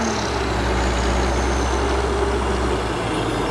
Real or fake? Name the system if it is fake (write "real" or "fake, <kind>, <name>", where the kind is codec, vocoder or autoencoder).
real